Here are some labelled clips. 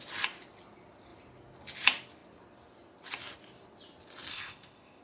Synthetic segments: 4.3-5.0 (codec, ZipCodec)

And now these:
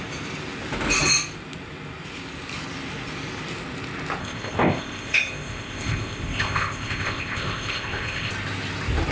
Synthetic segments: 4.2-8.3 (codec, ZipCodec)

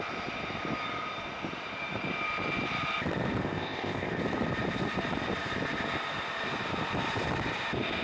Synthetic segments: 3.4-4.2 (codec, ZipCodec)

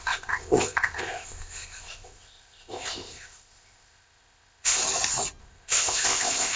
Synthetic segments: 0.0-4.8 (codec, ZipCodec); 5.4-6.6